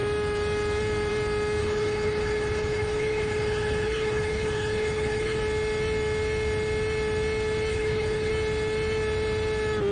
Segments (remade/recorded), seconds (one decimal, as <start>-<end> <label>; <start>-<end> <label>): 0.0-1.6 recorded; 1.6-5.4 remade; 5.4-7.7 recorded; 7.7-8.3 remade; 8.3-9.9 recorded